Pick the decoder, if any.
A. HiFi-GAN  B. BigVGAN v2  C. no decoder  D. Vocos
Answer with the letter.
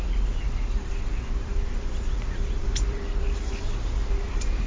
B